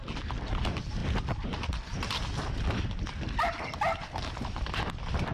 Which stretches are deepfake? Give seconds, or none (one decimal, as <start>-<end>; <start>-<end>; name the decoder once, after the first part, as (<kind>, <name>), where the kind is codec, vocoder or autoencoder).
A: none